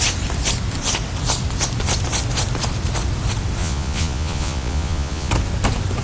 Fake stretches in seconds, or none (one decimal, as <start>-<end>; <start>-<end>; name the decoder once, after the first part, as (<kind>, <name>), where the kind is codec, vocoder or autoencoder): 3.6-5.3 (vocoder, Vocos)